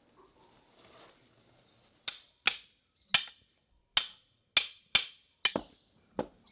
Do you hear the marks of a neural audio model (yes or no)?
no